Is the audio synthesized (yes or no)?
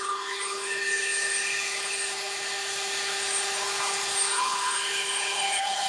yes